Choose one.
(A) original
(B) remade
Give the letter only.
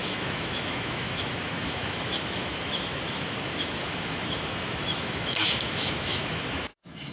B